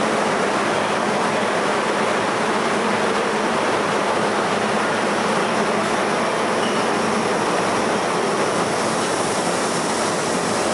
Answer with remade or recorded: recorded